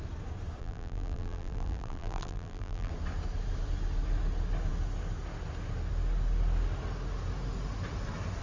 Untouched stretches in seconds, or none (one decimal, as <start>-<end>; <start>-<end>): 0.0-0.6; 2.9-8.4